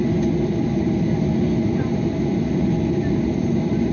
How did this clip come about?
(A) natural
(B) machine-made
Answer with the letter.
A